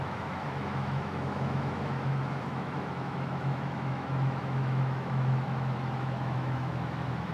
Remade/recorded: remade